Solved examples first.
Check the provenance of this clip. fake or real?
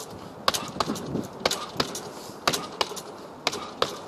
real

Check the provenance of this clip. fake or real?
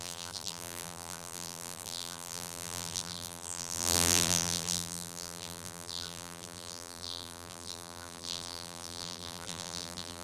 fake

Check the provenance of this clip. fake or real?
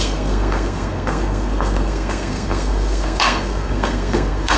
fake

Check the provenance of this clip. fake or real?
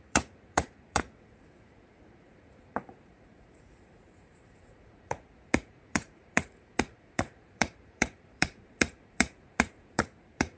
fake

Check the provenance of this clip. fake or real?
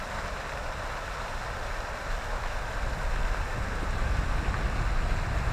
real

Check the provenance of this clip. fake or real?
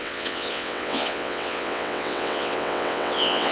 fake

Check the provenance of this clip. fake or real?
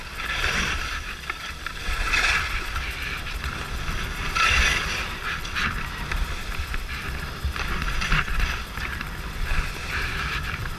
fake